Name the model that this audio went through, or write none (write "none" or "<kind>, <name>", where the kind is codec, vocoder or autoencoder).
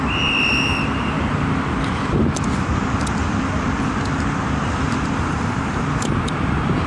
vocoder, BigVGAN v2